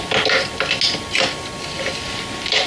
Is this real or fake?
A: real